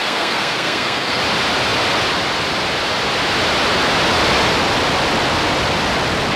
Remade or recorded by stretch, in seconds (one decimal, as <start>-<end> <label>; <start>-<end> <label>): 0.0-1.2 remade; 1.2-6.4 recorded